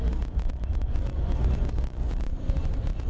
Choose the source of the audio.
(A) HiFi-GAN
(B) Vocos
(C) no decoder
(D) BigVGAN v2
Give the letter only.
B